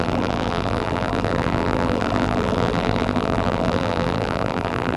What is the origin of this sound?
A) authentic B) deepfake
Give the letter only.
B